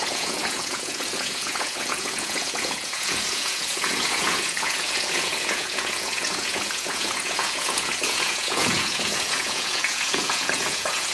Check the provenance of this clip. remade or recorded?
remade